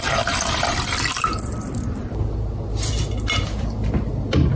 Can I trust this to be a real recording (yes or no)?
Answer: yes